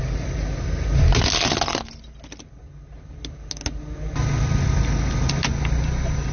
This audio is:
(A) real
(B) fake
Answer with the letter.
A